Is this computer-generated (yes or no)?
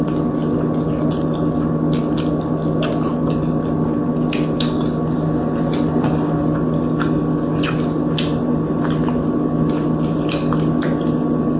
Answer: no